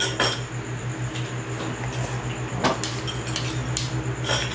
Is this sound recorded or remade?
recorded